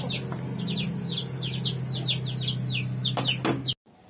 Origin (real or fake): real